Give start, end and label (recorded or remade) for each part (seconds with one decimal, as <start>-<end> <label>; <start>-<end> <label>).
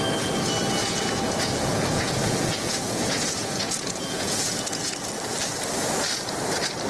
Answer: 0.0-0.8 recorded; 0.8-4.9 remade; 4.9-6.9 recorded